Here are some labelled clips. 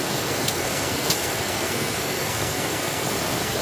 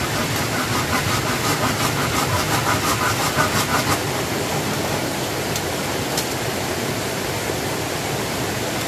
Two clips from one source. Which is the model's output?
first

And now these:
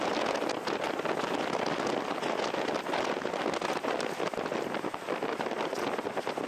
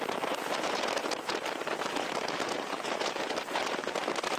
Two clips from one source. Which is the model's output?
second